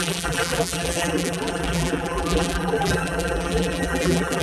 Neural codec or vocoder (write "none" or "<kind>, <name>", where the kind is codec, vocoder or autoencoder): vocoder, BigVGAN v2